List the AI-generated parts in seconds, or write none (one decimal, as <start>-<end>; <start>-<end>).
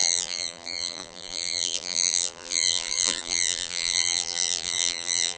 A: 0.0-5.4